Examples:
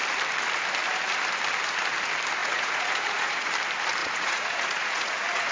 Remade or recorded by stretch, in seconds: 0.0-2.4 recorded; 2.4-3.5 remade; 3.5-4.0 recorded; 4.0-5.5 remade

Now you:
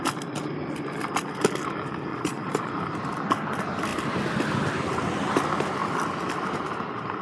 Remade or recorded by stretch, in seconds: 0.0-2.1 recorded; 2.1-2.7 remade; 2.7-7.2 recorded

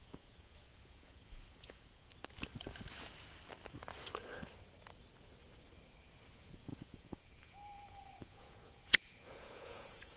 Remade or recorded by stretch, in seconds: 0.0-2.1 remade; 2.1-6.3 recorded; 6.3-10.2 remade